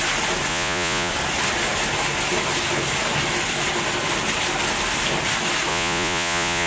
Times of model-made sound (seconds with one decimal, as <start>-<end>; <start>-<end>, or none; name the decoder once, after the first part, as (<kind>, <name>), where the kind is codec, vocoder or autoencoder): 0.5-1.1 (vocoder, Vocos); 5.7-6.7